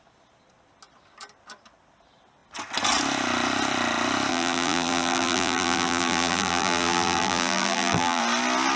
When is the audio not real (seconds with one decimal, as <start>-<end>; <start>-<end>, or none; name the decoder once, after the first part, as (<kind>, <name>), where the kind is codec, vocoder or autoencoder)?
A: 4.3-8.2 (vocoder, BigVGAN v2)